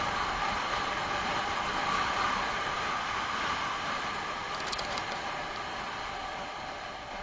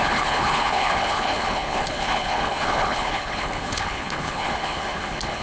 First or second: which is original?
first